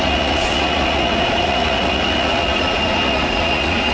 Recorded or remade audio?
remade